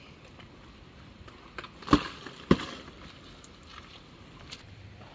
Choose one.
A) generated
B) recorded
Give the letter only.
B